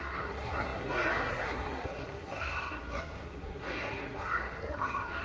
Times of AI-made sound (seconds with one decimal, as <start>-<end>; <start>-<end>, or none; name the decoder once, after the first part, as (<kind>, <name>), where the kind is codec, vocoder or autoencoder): 0.0-5.2 (codec, SNAC)